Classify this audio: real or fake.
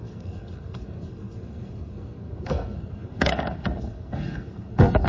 fake